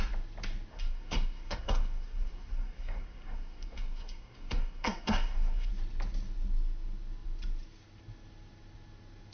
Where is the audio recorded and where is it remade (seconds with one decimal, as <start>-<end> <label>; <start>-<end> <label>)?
0.0-0.7 recorded; 0.7-5.7 remade; 5.7-9.3 recorded